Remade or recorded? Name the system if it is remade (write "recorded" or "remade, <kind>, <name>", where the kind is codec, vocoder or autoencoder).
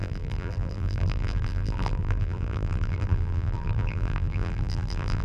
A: remade, vocoder, BigVGAN v2